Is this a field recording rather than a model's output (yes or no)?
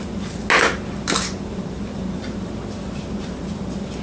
yes